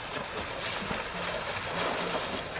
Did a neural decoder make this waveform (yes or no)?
no